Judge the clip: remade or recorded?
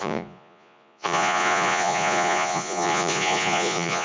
remade